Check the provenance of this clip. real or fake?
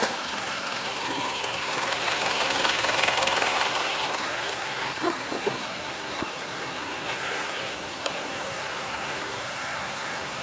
fake